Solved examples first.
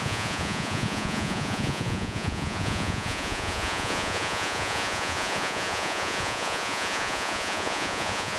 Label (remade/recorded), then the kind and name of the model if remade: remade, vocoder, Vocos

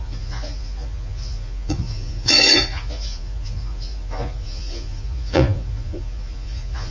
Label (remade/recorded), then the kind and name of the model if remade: remade, vocoder, Vocos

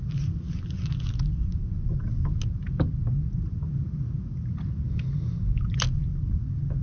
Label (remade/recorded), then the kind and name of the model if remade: recorded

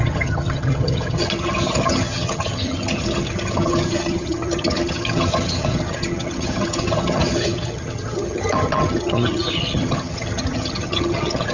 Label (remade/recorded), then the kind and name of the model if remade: remade, vocoder, HiFi-GAN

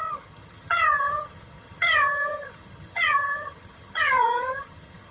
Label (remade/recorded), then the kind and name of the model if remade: remade, vocoder, HiFi-GAN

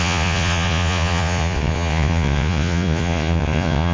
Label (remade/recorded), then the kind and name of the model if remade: remade, vocoder, Vocos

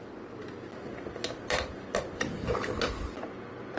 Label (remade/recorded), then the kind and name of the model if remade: recorded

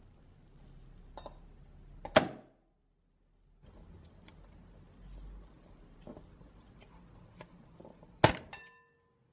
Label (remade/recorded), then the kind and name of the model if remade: recorded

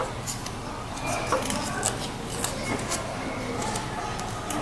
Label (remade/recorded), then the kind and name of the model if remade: recorded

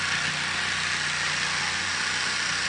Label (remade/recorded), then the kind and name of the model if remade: recorded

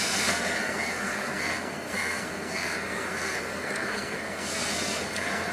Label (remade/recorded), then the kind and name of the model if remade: remade, codec, SNAC